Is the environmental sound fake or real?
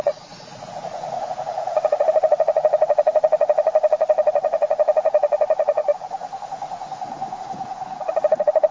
fake